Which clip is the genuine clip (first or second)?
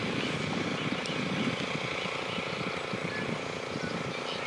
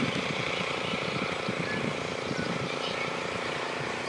first